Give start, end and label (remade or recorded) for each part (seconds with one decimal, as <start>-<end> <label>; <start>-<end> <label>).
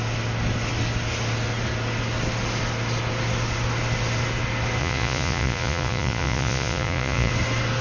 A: 0.0-4.8 recorded; 4.8-7.3 remade; 7.3-7.8 recorded